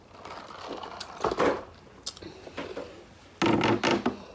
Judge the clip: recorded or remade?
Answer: recorded